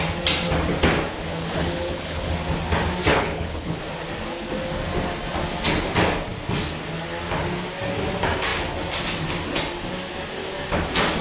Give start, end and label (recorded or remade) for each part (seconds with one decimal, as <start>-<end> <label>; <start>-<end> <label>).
0.0-1.3 recorded; 1.3-2.3 remade; 2.3-3.1 recorded; 3.1-3.8 remade; 3.8-11.2 recorded